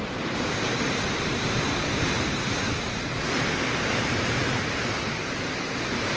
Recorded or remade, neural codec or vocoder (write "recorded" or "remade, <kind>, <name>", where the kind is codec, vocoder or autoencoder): remade, vocoder, BigVGAN v2